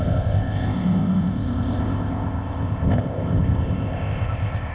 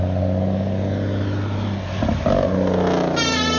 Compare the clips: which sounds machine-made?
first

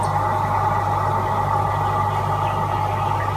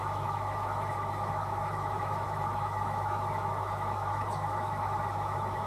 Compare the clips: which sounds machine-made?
second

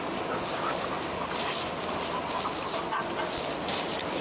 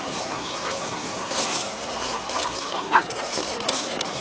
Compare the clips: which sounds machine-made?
second